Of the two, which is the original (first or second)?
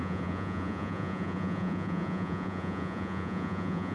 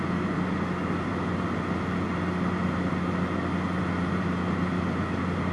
second